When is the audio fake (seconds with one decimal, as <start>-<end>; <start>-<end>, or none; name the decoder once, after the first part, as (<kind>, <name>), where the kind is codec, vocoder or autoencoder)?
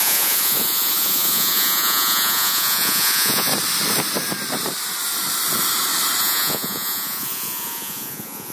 0.0-3.5 (vocoder, Vocos); 6.2-8.5